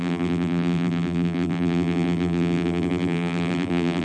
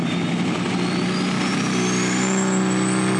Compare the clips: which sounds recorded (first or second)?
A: second